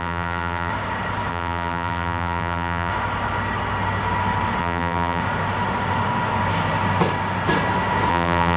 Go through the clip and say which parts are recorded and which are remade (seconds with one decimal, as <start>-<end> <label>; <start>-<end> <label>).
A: 0.0-0.7 remade; 0.7-1.3 recorded; 1.3-2.9 remade; 2.9-4.6 recorded; 4.6-5.2 remade; 5.2-8.1 recorded; 8.1-8.6 remade